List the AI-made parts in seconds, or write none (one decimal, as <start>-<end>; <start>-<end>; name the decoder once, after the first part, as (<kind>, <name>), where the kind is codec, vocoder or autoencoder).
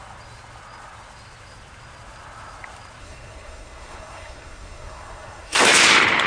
3.0-5.6 (codec, SNAC)